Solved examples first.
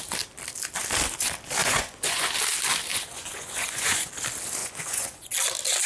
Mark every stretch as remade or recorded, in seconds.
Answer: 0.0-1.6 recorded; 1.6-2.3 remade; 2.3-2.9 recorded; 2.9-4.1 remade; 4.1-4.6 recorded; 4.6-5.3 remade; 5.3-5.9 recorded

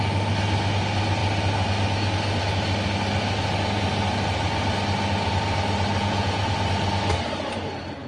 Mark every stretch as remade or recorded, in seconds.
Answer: 0.0-6.0 recorded; 6.0-6.5 remade; 6.5-8.1 recorded

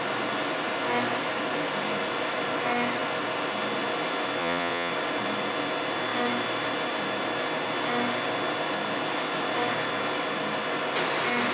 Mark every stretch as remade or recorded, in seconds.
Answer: 0.0-4.4 recorded; 4.4-4.9 remade; 4.9-11.5 recorded

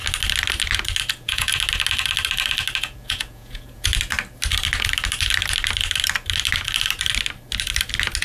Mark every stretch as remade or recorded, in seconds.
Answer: 0.0-1.1 recorded; 1.1-1.5 remade; 1.5-2.8 recorded; 2.8-3.9 remade; 3.9-8.2 recorded

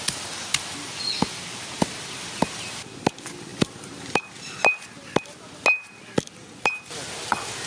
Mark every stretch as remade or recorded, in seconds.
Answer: 0.0-7.7 recorded

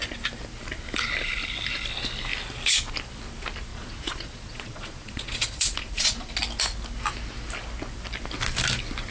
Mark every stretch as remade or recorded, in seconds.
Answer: 0.0-3.7 recorded; 3.7-6.3 remade; 6.3-9.1 recorded

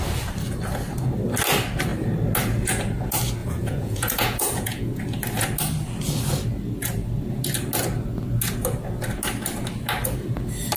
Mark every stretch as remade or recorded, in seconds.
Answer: 0.0-3.4 recorded; 3.4-5.0 remade; 5.0-10.8 recorded

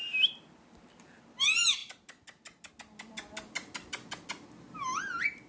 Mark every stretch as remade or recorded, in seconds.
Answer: 0.0-5.5 recorded